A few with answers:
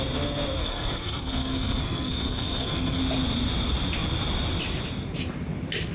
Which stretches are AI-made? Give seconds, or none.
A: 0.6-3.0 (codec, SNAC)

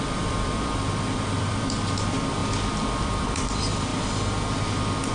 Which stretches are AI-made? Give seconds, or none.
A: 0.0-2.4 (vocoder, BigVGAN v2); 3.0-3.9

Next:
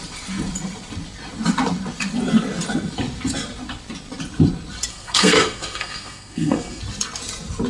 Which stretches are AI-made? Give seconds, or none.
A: 4.9-6.8 (codec, SNAC)